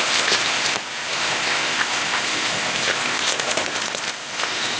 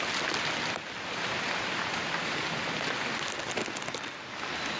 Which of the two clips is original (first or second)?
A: second